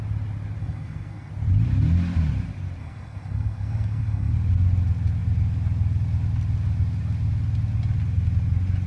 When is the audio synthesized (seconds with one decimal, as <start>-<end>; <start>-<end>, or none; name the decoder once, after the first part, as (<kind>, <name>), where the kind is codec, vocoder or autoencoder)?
0.6-1.3 (codec, SNAC); 2.8-4.3